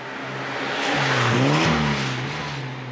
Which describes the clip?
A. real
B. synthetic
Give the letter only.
A